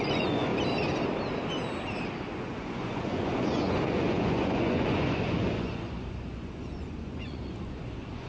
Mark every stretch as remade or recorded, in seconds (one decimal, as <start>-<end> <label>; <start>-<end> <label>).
0.0-0.5 remade; 0.5-2.3 recorded; 2.3-8.3 remade